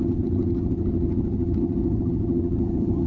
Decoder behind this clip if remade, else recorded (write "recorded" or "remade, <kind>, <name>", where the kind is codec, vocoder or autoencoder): remade, vocoder, HiFi-GAN